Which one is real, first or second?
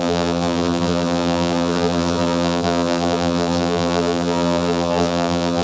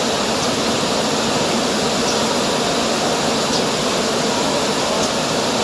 second